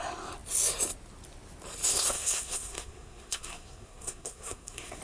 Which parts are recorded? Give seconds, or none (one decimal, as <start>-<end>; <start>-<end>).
0.0-1.9